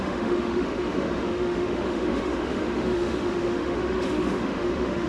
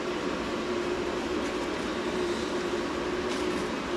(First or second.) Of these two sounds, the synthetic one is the first